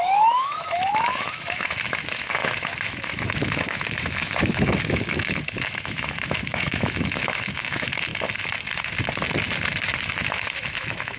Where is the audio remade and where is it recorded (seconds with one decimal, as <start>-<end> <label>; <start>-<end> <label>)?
0.0-8.1 remade; 8.1-10.2 recorded; 10.2-11.2 remade